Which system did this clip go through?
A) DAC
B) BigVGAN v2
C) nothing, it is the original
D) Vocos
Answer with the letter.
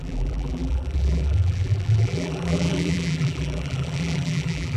B